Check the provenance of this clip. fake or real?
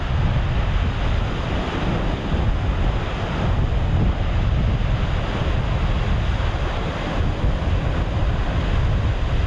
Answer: real